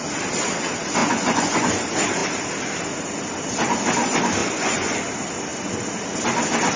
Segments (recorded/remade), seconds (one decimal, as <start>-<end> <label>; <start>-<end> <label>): 0.0-1.0 recorded; 1.0-1.8 remade; 1.8-4.4 recorded; 4.4-5.0 remade; 5.0-6.8 recorded